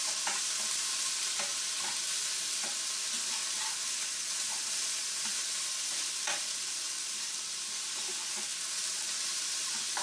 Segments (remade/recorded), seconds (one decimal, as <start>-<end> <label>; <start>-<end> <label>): 0.0-1.5 remade; 1.5-2.6 recorded; 2.6-5.3 remade; 5.3-6.6 recorded; 6.6-10.0 remade